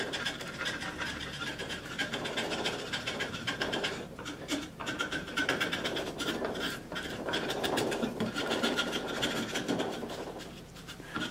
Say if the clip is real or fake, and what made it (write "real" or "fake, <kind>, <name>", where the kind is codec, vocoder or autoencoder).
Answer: fake, vocoder, BigVGAN v2